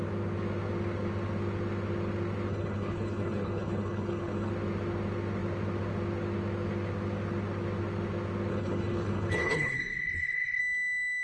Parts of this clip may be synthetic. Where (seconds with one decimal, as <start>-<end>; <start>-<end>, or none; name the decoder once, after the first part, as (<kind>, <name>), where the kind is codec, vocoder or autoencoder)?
2.5-4.5 (codec, HILCodec); 8.5-10.6